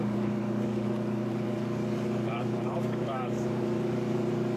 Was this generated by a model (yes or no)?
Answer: yes